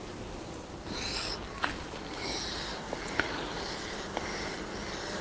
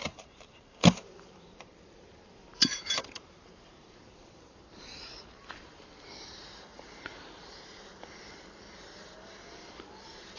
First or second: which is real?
first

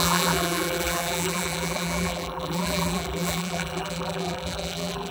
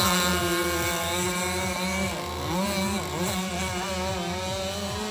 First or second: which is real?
second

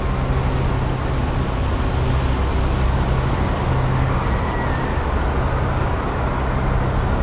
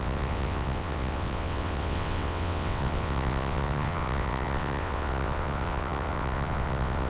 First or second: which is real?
first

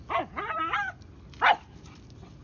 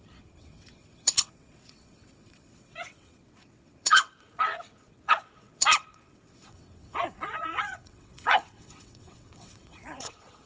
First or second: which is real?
first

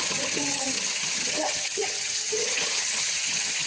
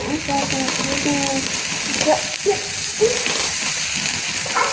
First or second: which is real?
second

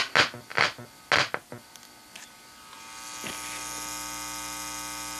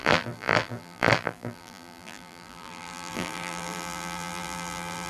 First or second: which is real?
first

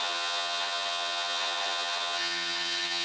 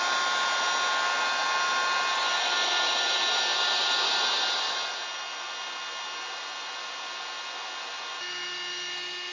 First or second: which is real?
second